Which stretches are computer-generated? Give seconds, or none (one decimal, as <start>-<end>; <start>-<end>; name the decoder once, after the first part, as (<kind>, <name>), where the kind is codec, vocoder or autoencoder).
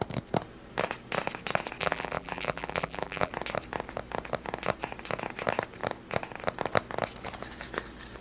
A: 1.8-3.3 (vocoder, BigVGAN v2)